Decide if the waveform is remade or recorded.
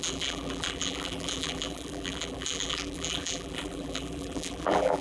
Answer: remade